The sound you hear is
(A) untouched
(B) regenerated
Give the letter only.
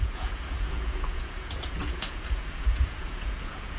B